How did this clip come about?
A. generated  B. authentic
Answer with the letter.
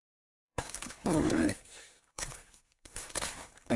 A